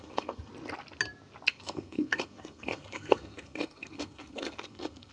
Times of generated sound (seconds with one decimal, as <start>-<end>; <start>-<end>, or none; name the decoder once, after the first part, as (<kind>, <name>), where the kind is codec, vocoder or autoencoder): 0.0-0.5 (codec, SNAC); 1.5-5.1